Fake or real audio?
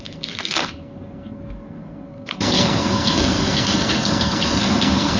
fake